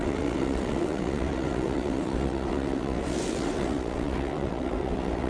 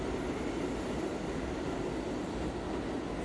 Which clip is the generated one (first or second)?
first